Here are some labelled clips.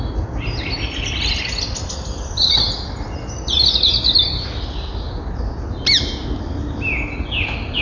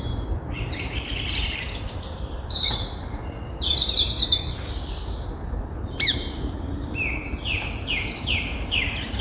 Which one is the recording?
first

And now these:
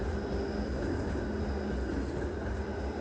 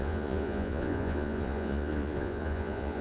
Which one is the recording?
first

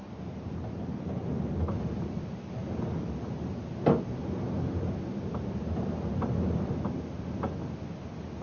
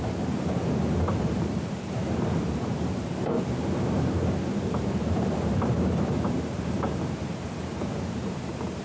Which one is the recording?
first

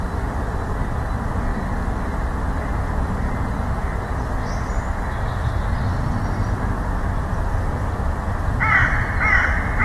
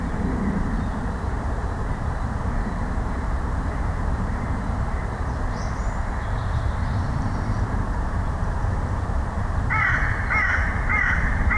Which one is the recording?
first